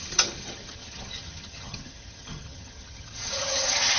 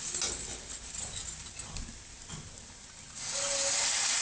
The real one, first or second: second